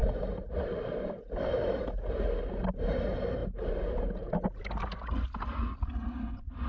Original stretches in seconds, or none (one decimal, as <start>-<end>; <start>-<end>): 0.0-6.7

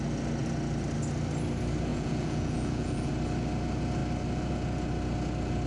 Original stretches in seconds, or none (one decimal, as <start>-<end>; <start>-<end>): 0.0-1.9; 3.1-5.7

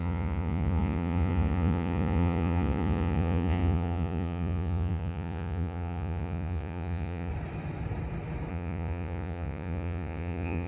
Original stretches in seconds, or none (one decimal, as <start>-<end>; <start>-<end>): 7.3-8.5

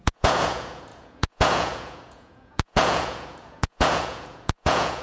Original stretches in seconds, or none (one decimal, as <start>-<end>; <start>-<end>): none

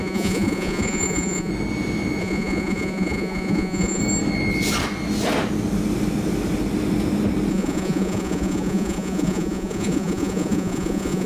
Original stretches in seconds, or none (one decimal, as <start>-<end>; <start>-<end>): 1.5-2.2; 4.0-7.5